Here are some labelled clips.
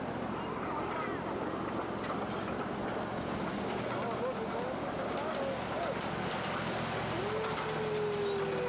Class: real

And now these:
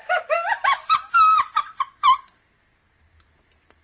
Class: real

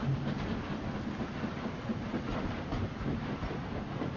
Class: real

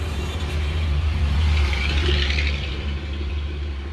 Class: fake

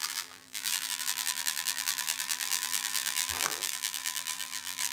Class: fake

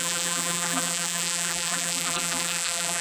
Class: fake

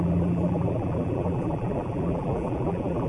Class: fake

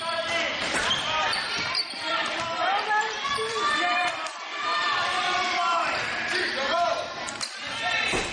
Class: fake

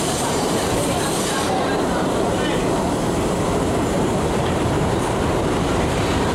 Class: fake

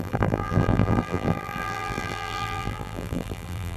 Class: fake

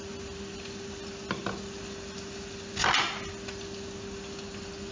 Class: real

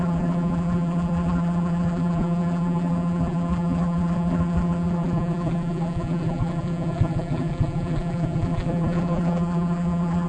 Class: fake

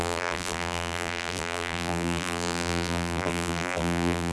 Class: fake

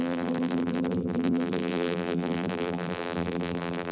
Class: fake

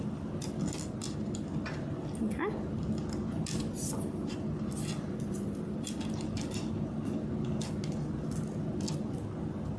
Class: real